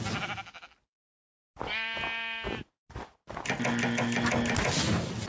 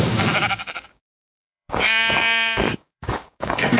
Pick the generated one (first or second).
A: second